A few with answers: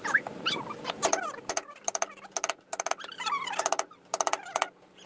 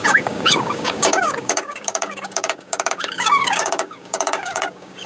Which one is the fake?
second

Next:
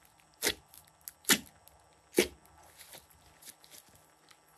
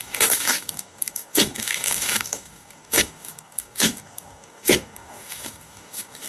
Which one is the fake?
second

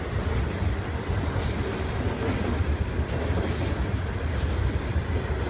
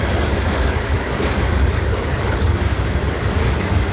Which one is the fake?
second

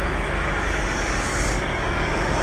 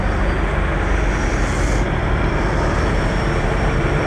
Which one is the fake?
first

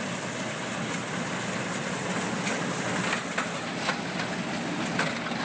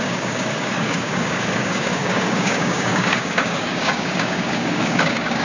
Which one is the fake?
second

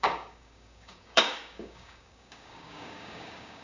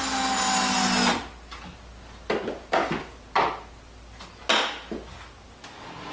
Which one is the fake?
first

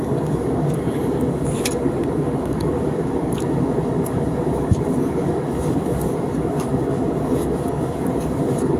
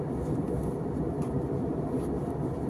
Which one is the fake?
first